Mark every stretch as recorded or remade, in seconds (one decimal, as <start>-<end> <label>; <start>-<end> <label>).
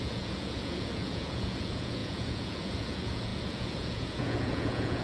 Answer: 0.0-5.0 remade